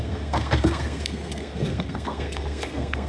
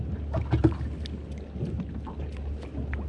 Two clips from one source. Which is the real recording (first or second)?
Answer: second